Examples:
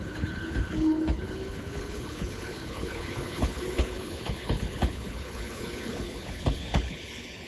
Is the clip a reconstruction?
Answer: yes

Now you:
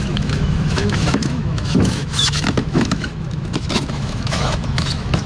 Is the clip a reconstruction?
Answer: yes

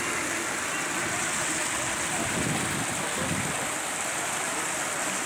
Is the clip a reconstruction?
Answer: no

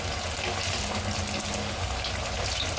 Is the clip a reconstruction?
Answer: no